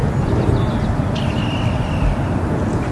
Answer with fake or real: real